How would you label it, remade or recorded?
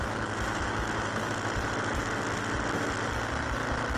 recorded